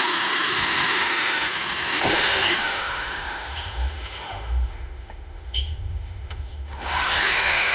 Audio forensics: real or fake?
fake